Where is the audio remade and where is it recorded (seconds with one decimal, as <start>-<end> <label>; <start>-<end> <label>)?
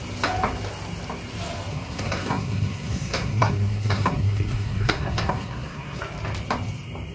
0.0-1.7 recorded; 1.7-6.0 remade; 6.0-7.1 recorded